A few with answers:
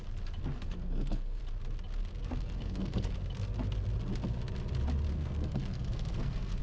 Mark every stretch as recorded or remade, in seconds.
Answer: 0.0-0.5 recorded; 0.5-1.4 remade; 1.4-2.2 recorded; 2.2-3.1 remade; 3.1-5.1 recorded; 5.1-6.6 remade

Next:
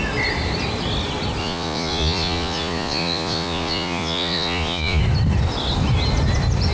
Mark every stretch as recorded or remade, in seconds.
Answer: 0.0-1.4 recorded; 1.4-5.0 remade; 5.0-6.7 recorded